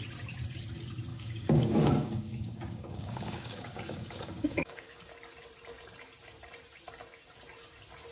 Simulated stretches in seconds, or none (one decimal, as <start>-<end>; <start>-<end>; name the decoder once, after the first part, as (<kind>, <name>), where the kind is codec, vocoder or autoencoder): 1.1-5.0 (codec, DAC)